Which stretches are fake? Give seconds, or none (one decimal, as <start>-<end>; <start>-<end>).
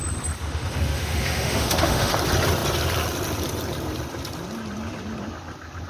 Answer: 0.4-2.1